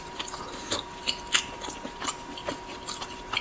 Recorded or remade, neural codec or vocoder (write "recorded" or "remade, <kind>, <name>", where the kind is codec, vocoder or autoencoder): remade, vocoder, BigVGAN v2